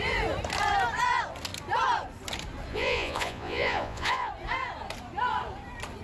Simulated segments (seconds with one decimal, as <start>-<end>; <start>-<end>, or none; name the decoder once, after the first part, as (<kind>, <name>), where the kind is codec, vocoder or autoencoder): 2.7-4.3 (vocoder, Vocos)